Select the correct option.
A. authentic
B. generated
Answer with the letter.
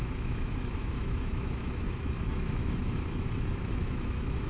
B